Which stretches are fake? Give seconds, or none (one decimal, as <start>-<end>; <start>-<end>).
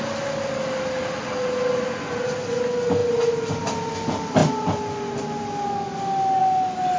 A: none